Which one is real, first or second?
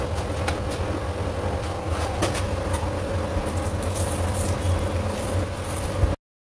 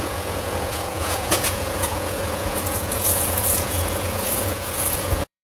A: first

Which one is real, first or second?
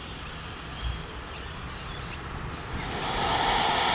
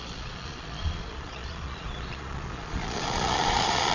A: first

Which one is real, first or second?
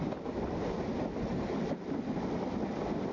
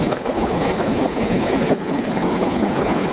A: first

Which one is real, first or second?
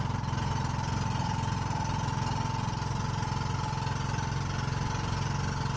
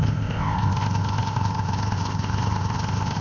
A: first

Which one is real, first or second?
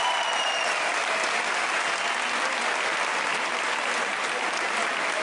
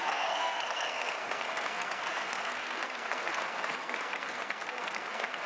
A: first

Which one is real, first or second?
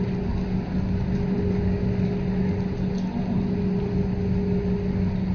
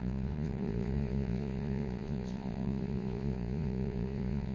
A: first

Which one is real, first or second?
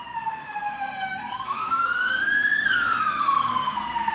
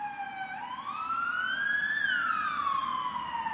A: second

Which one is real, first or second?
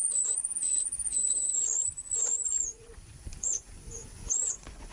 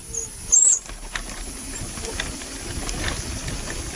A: second